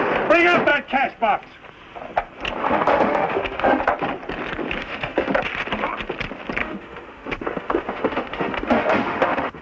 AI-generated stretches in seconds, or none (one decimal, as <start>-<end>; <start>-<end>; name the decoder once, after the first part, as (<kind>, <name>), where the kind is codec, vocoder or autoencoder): 2.6-3.8 (autoencoder, DAC-VAE); 4.8-5.3; 6.6-9.6